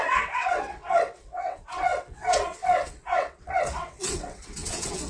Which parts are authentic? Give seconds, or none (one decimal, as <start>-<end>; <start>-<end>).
none